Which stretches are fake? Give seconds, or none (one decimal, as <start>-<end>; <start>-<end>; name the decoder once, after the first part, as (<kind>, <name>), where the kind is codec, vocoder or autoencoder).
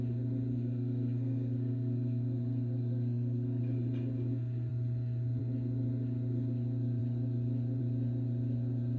0.5-3.6 (codec, SNAC)